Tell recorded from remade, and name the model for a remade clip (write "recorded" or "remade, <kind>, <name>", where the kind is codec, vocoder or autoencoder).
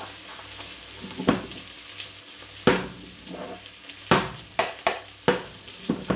recorded